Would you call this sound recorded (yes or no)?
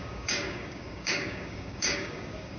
no